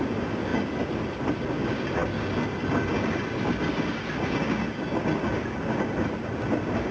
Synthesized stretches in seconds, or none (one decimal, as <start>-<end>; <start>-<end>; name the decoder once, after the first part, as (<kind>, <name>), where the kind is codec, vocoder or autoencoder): 0.5-1.3 (vocoder, BigVGAN v2)